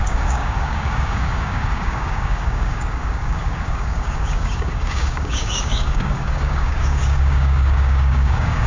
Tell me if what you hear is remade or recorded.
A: remade